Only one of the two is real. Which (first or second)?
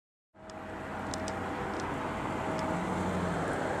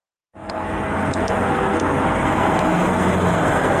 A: first